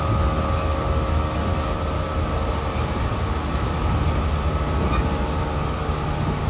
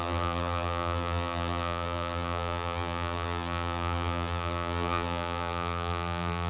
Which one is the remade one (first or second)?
second